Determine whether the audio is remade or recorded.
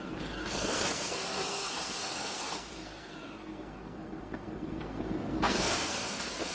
remade